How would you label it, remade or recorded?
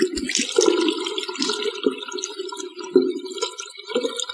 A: recorded